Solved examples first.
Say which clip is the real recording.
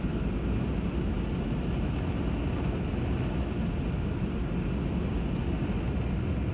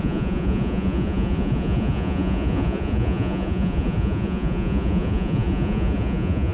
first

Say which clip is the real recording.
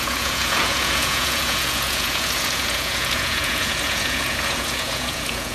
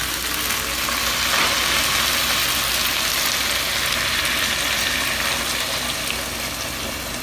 second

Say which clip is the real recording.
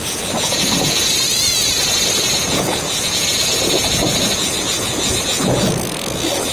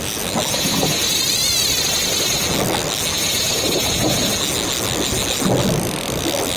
second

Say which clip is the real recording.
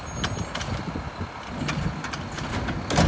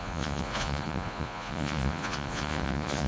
first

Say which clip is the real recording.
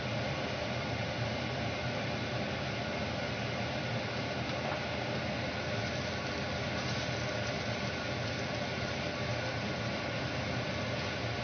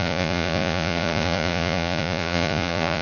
first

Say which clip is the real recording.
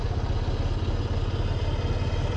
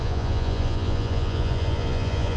first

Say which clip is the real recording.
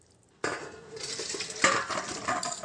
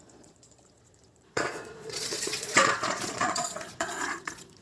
first